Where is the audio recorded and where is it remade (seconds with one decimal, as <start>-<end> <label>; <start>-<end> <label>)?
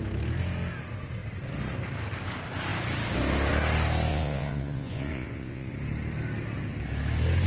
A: 0.0-4.1 recorded; 4.1-5.7 remade; 5.7-7.5 recorded